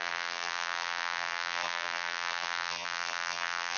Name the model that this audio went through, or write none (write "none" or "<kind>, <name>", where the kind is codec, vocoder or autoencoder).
vocoder, BigVGAN v2